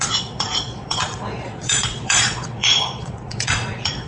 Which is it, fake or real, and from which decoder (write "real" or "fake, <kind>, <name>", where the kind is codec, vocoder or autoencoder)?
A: fake, vocoder, Vocos